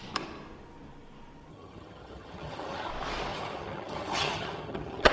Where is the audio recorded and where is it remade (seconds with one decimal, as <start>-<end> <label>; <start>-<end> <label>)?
0.0-1.5 recorded; 1.5-2.9 remade; 2.9-3.3 recorded; 3.3-5.1 remade